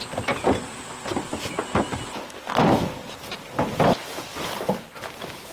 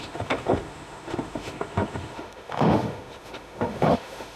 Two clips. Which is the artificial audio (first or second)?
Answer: second